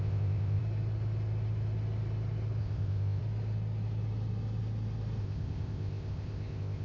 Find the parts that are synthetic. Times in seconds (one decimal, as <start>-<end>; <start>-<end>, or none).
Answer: 0.0-0.6; 2.6-3.2; 5.2-6.8

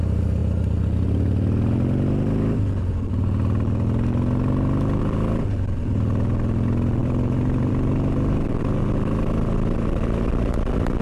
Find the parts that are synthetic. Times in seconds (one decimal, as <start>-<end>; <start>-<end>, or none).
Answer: 7.0-7.7

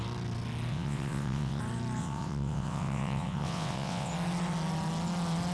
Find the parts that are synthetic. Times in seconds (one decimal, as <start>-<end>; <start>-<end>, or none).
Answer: 0.7-1.6; 2.0-4.1

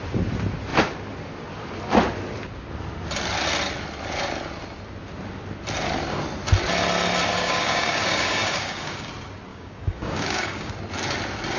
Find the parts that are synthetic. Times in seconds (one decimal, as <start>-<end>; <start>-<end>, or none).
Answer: 7.3-9.1; 9.5-10.7

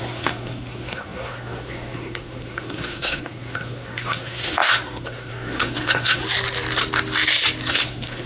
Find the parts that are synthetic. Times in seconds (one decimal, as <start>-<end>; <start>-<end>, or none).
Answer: 0.0-6.2; 7.7-8.3

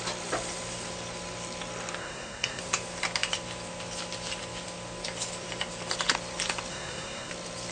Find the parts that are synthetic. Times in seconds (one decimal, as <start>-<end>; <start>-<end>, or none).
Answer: 2.0-2.6; 6.7-7.3

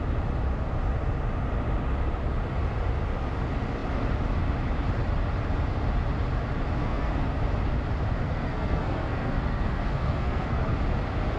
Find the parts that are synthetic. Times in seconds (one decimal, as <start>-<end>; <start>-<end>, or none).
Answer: 6.8-7.4; 8.2-10.8